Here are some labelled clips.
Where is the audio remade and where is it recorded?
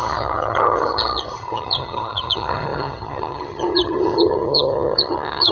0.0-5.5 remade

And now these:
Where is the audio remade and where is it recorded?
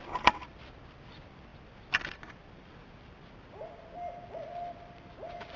0.0-5.6 recorded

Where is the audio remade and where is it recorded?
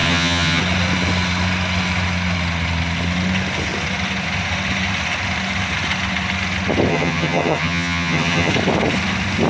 0.0-0.6 remade; 0.6-6.9 recorded; 6.9-8.5 remade; 8.5-9.5 recorded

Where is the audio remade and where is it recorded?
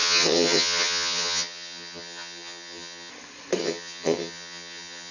0.0-3.1 remade; 3.1-3.6 recorded; 3.6-5.1 remade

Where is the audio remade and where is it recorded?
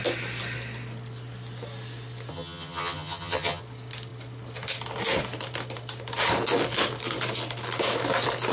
0.0-2.3 recorded; 2.3-3.6 remade; 3.6-8.5 recorded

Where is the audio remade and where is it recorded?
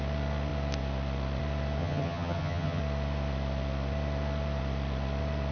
0.0-1.8 recorded; 1.8-2.8 remade; 2.8-5.5 recorded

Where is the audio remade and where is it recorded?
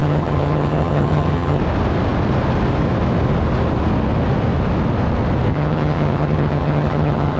0.0-1.6 remade; 1.6-5.5 recorded; 5.5-7.4 remade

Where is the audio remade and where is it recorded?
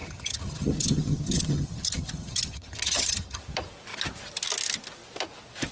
0.0-3.4 remade; 3.4-5.7 recorded